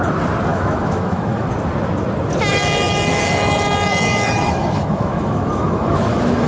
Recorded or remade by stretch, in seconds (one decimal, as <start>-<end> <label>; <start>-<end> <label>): 0.0-0.5 recorded; 0.5-1.5 remade; 1.5-2.5 recorded; 2.5-6.5 remade